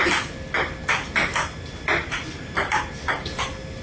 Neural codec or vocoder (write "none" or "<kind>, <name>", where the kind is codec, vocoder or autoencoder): none